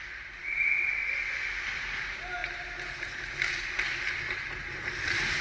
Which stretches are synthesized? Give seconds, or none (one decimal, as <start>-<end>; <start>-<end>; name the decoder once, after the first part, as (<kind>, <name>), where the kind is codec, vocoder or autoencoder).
none